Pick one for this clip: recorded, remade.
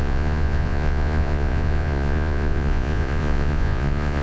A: remade